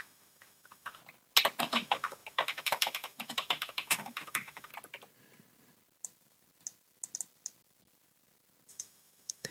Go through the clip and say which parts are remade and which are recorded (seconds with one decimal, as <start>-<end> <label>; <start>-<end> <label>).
0.0-1.0 remade; 1.0-1.6 recorded; 1.6-4.7 remade; 4.7-8.7 recorded; 8.7-9.5 remade